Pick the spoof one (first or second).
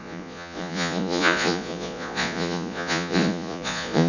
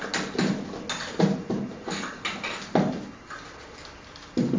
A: first